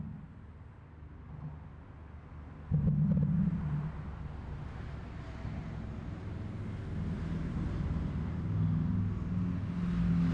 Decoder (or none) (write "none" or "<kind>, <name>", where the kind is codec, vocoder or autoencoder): none